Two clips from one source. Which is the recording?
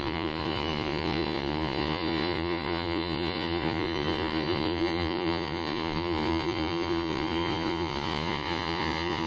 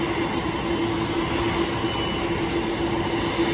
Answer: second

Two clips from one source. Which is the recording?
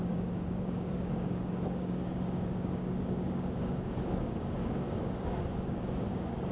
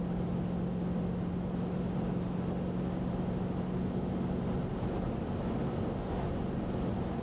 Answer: second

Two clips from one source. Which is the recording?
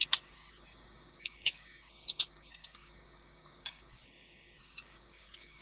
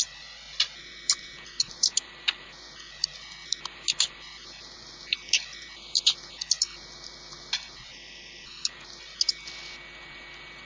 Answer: second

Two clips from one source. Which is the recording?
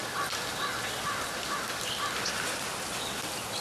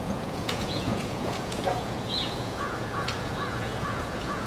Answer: first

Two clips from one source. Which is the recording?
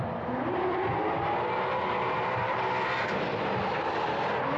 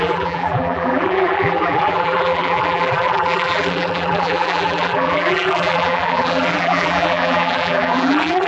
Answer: first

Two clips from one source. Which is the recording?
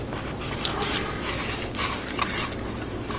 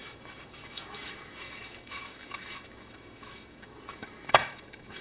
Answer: first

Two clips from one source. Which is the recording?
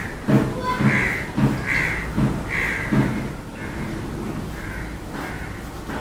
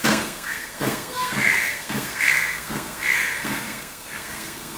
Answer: first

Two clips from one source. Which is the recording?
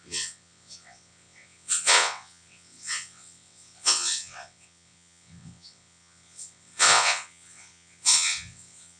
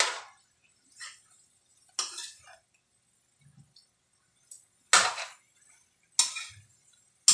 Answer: second